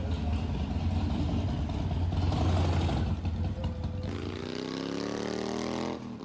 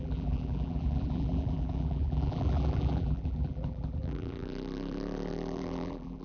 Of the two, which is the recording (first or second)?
first